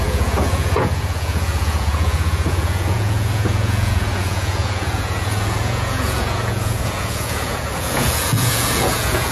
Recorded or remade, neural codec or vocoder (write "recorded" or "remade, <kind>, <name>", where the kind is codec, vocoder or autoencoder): remade, vocoder, Vocos